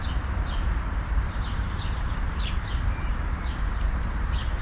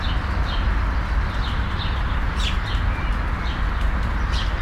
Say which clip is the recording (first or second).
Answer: second